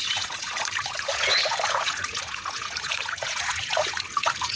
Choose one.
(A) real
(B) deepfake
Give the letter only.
B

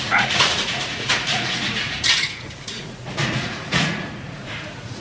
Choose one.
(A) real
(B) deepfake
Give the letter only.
B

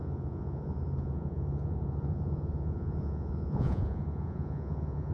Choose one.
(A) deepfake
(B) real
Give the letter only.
A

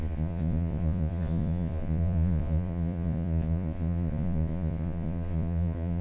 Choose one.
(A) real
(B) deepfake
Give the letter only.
B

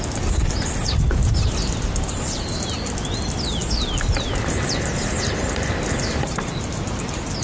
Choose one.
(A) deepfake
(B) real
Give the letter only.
B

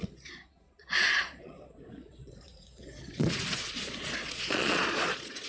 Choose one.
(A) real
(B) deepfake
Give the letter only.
B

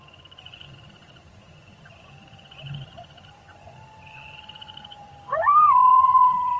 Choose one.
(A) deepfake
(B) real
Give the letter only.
A